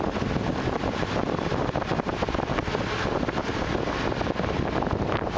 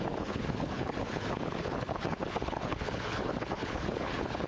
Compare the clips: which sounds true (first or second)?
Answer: first